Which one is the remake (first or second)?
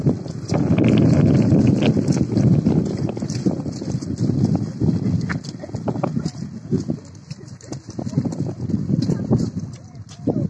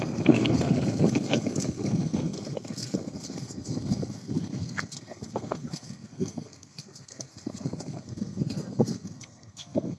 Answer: second